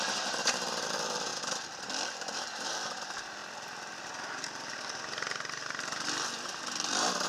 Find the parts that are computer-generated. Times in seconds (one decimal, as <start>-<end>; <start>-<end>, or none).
0.0-1.3; 1.8-3.4; 5.6-7.3

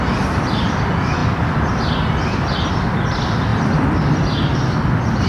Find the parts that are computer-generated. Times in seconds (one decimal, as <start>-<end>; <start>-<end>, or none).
1.2-2.7; 3.5-4.2

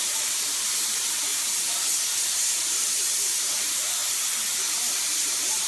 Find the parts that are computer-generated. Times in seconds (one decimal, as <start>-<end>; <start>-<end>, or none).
0.0-1.3; 2.2-4.0; 4.9-5.7

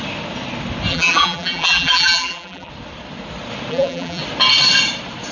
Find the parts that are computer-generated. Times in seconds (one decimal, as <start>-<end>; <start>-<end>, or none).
0.9-2.7; 3.7-4.2